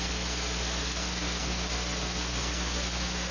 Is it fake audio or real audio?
fake